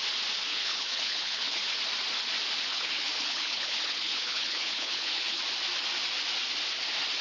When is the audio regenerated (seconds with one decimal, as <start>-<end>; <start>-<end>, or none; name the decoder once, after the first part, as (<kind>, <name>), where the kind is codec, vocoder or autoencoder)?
0.5-1.8 (codec, HILCodec); 2.7-5.4